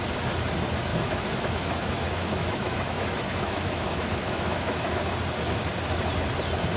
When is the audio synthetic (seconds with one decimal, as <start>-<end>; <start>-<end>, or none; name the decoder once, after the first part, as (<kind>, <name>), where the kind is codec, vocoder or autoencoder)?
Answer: 0.9-5.0 (autoencoder, DAC-VAE)